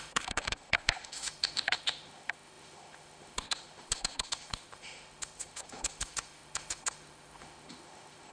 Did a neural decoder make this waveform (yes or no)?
yes